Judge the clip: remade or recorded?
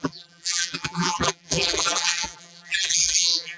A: remade